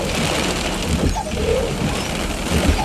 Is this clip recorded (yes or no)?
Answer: yes